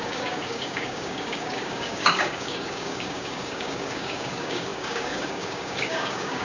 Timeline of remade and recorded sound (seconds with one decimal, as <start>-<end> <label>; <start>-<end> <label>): 0.0-6.4 remade